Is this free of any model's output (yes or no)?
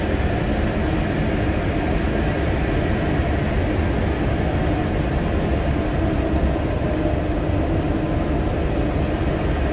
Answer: yes